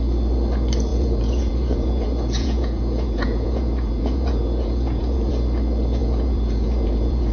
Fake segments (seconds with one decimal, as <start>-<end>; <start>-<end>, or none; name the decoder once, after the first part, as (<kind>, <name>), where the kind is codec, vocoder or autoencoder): 0.9-5.3 (vocoder, Vocos); 6.0-7.3